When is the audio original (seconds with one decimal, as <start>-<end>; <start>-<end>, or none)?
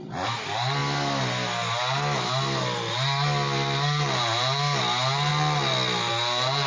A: 0.0-6.7